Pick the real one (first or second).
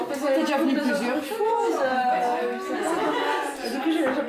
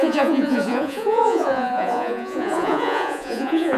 first